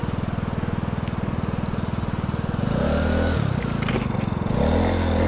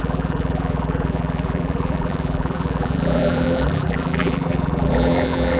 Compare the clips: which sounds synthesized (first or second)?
second